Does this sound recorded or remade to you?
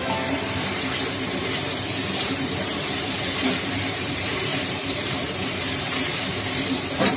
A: remade